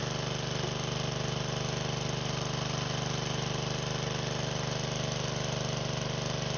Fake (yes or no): no